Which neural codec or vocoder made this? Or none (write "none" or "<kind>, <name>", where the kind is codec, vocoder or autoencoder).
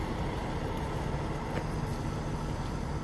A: none